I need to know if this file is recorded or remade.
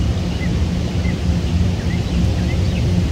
recorded